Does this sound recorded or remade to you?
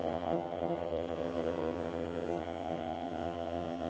remade